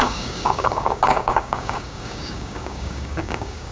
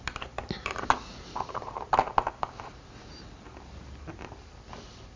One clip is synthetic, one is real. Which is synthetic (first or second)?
first